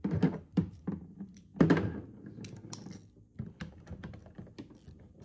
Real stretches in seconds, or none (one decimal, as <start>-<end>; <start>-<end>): 1.5-3.7; 4.2-5.2